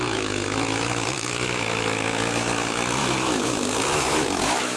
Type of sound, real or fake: fake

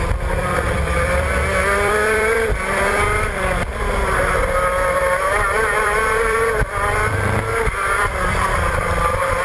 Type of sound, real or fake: fake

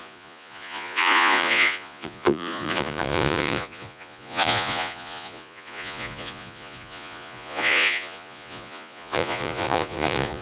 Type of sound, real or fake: fake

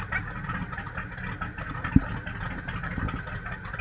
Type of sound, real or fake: real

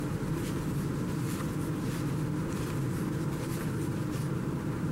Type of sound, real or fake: real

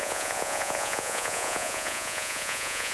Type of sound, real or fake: fake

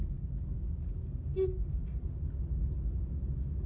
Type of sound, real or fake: real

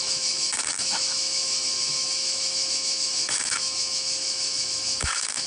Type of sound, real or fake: fake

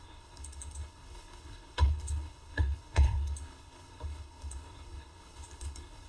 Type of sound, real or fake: fake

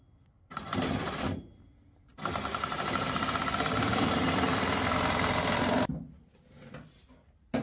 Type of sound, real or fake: real